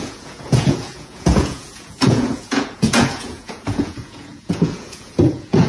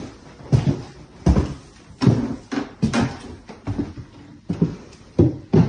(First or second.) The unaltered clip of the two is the second